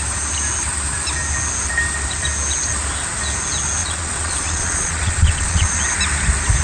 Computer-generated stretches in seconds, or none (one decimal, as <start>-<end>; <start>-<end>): 3.8-5.8